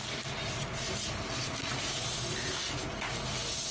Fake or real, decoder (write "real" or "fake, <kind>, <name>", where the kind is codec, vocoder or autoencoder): real